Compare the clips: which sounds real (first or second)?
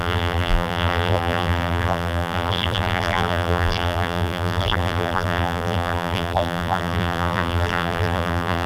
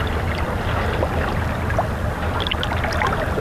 second